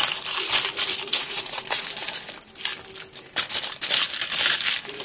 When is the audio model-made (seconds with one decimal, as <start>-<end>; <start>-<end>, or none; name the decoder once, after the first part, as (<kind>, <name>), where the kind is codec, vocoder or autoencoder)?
1.1-1.9 (vocoder, Vocos)